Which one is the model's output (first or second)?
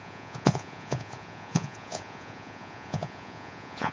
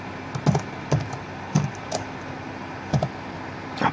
first